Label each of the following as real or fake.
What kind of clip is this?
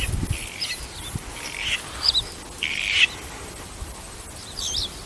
real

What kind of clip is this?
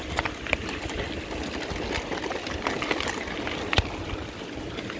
real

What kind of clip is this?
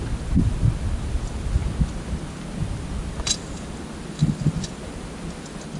real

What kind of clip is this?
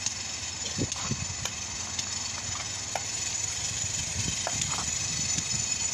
real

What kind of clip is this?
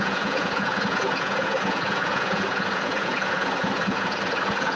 fake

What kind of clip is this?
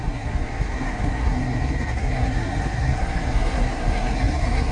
fake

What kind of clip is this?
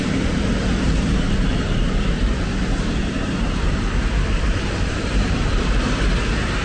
fake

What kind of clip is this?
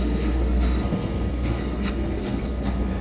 fake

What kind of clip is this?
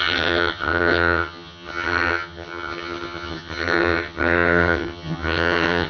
fake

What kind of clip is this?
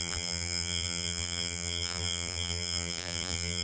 fake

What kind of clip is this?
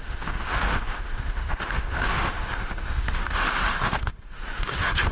fake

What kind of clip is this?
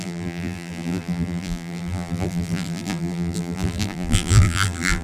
fake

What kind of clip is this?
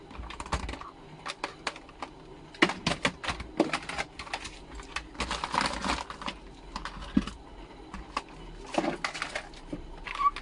real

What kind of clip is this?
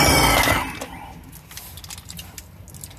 real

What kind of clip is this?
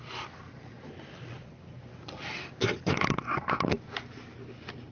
real